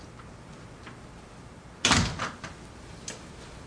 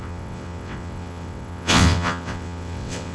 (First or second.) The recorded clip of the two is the first